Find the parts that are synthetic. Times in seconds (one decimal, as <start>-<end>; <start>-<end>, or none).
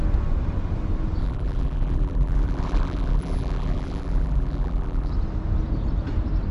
1.2-5.1